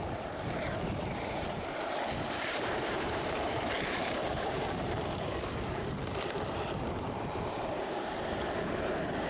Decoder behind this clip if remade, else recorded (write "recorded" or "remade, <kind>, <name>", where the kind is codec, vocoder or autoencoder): remade, vocoder, BigVGAN v2